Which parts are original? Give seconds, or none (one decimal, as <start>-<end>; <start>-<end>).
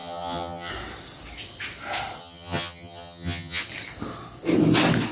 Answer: 0.7-2.2; 3.6-5.1